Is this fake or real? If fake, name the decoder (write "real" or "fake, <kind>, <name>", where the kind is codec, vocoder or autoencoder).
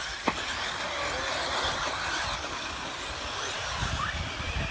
real